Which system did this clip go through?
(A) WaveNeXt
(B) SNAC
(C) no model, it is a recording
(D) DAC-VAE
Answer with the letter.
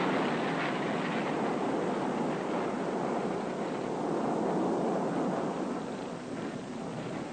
C